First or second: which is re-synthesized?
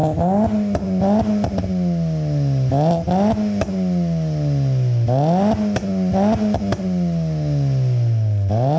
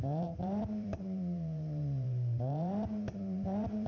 second